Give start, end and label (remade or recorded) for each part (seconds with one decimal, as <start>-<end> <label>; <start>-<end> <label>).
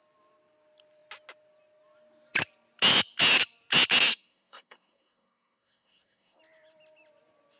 0.0-4.1 recorded; 4.1-6.4 remade; 6.4-7.6 recorded